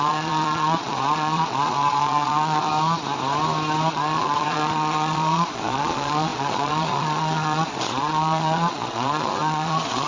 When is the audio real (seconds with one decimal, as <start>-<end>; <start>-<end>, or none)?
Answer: 2.7-3.9